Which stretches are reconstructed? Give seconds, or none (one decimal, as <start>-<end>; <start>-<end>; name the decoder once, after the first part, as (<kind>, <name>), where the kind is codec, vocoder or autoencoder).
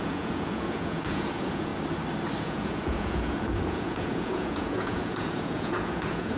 0.0-1.7 (vocoder, Vocos); 2.4-6.4